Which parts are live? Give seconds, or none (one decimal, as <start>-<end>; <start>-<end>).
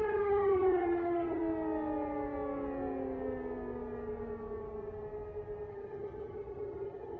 1.4-5.7